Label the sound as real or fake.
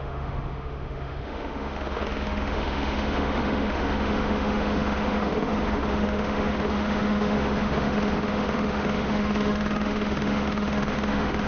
fake